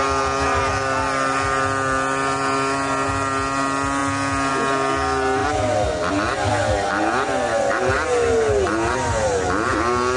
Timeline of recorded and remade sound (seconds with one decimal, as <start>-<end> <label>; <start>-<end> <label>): 0.0-10.2 recorded